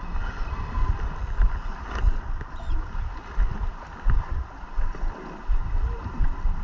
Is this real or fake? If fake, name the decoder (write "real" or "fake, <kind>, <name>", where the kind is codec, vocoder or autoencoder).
real